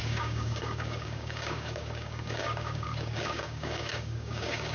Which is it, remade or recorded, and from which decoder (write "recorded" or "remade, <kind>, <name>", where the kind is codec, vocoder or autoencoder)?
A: remade, codec, DAC